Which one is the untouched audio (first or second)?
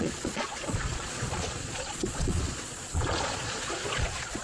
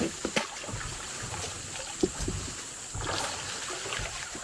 second